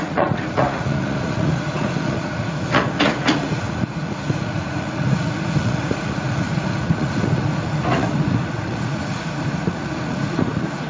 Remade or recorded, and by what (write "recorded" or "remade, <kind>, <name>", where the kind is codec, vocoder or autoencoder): remade, vocoder, Vocos